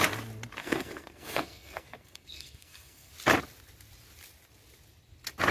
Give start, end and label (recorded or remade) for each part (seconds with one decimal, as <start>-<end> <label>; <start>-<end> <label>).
0.0-0.6 recorded; 0.6-3.1 remade; 3.1-5.5 recorded